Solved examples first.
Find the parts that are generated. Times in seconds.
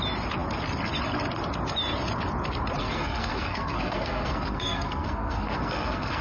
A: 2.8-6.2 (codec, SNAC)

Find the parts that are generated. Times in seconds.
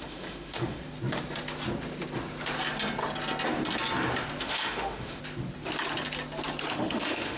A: 0.0-0.8 (autoencoder, DAC-VAE); 4.4-5.2; 6.7-7.4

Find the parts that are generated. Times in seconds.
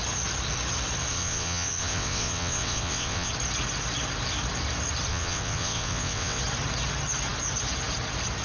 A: 1.1-3.3 (vocoder, WaveNeXt); 5.1-6.4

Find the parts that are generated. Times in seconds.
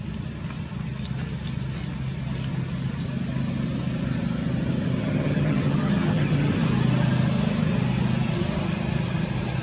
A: 5.0-6.5 (vocoder, HiFi-GAN)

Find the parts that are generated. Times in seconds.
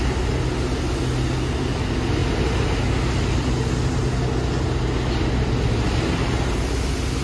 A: none